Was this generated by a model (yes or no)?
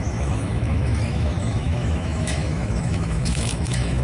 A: yes